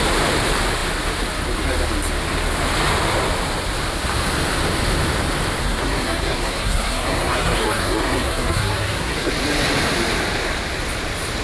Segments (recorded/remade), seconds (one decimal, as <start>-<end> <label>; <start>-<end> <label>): 0.0-5.6 recorded; 5.6-9.3 remade; 9.3-11.4 recorded